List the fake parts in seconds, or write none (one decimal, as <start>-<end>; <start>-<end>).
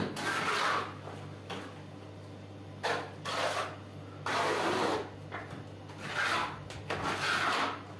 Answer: none